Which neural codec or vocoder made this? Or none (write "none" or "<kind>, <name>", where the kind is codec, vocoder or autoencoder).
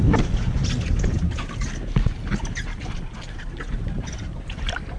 none